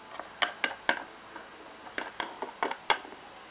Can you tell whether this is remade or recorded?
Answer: recorded